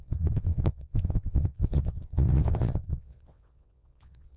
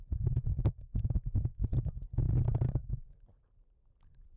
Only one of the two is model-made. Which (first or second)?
first